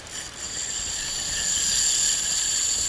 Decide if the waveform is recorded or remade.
recorded